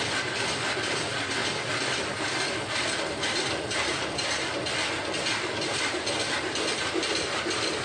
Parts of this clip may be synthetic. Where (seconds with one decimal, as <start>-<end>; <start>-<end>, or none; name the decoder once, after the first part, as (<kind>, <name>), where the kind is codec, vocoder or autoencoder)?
none